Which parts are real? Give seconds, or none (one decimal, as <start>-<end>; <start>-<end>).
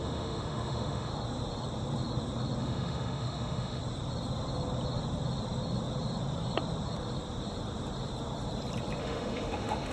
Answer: 1.1-2.6; 3.8-9.0